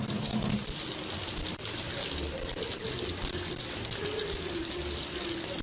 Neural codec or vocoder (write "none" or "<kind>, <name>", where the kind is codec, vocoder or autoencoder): none